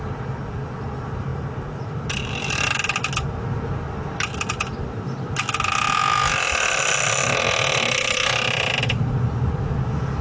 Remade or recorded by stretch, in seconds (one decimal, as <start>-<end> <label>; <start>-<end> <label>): 0.0-10.2 recorded